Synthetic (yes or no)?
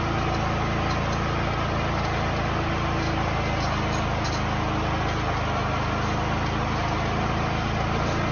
no